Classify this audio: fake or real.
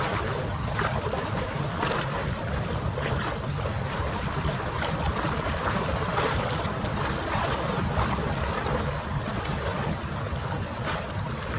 real